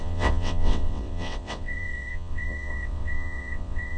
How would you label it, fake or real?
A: fake